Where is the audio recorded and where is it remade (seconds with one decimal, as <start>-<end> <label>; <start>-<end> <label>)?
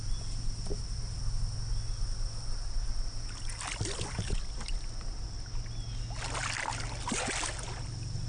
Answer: 0.0-8.3 recorded